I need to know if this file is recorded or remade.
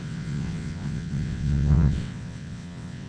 remade